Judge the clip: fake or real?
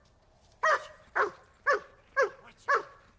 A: real